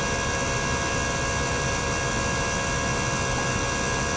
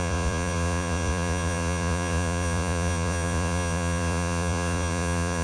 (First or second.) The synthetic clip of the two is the second